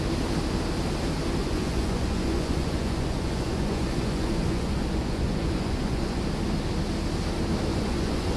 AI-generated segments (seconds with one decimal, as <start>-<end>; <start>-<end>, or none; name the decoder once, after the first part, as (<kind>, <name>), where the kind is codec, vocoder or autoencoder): 1.4-6.2 (vocoder, Vocos); 7.7-8.4